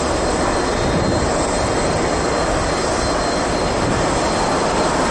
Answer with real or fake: real